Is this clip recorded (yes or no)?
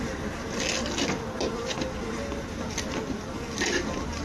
yes